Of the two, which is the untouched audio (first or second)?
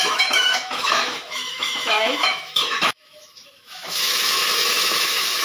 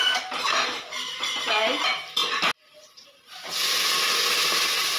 second